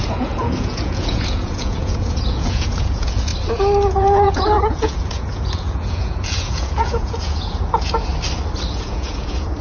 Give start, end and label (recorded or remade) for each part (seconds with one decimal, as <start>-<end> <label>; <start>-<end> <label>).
0.0-3.3 remade; 3.3-3.9 recorded; 3.9-8.1 remade; 8.1-8.7 recorded; 8.7-9.6 remade